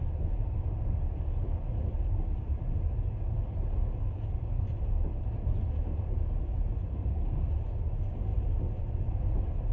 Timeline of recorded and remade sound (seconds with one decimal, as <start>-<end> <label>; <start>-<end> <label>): 0.0-6.9 recorded; 6.9-7.5 remade; 7.5-9.7 recorded